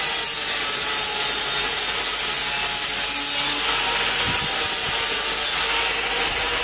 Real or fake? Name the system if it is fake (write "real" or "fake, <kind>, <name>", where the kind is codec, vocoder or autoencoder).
real